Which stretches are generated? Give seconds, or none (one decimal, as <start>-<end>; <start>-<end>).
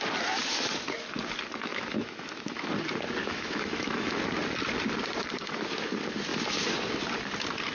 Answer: 1.7-2.7; 3.2-4.1